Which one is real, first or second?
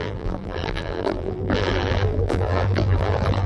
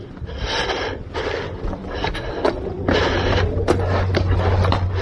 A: second